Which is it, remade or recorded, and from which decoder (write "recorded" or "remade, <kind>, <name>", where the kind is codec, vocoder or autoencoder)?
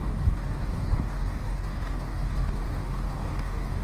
remade, codec, DAC